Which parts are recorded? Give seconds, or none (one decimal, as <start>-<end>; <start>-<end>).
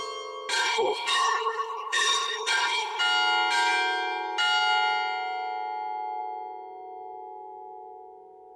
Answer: 0.0-0.5; 3.0-8.6